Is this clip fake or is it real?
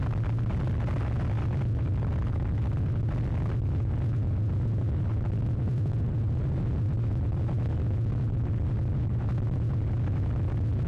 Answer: real